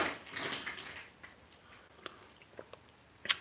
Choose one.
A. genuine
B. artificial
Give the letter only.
A